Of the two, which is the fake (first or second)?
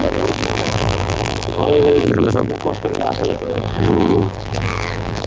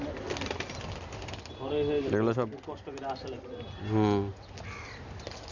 first